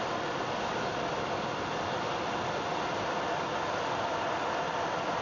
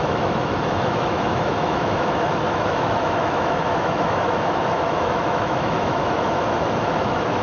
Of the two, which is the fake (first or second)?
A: second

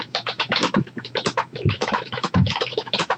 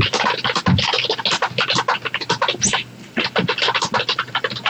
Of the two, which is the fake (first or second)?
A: first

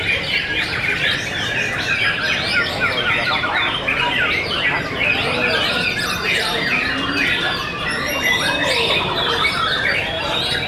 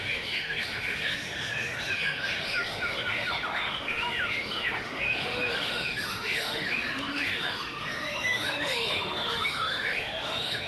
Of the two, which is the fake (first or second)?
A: second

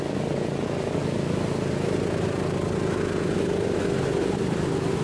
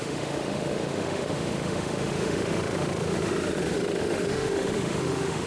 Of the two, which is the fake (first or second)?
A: second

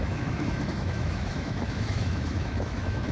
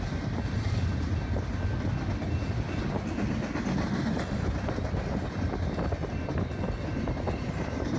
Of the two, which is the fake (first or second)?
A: first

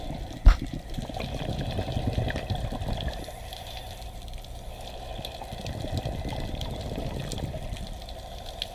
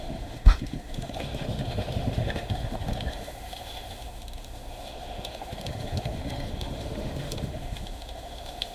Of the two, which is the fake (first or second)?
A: second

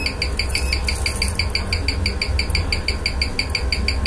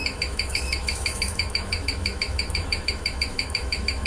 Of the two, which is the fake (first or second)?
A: second